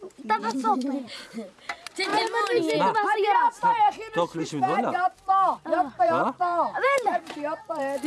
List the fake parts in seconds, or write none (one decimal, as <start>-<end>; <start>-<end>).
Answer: 0.0-2.1; 4.4-8.1